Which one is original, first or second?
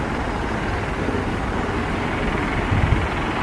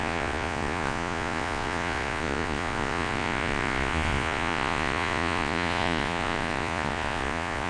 first